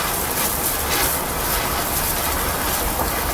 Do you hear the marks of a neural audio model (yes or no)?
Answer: no